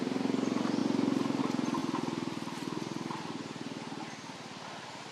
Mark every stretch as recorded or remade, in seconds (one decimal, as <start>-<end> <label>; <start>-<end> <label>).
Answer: 0.0-5.1 recorded